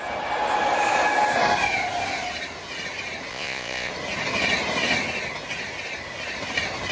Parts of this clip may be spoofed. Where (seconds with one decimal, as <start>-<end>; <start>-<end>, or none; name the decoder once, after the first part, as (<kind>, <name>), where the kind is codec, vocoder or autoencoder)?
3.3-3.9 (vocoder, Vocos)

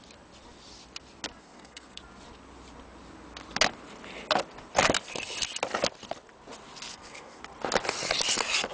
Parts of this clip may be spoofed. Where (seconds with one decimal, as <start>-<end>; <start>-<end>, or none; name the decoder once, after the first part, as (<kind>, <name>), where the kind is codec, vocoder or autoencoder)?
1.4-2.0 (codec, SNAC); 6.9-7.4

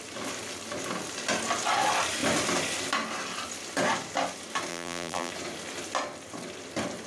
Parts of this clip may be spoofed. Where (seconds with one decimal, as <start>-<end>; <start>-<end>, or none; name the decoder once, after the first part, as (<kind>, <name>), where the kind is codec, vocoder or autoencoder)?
4.7-5.3 (vocoder, BigVGAN v2)